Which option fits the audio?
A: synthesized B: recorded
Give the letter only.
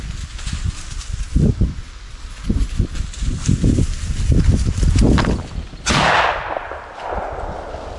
B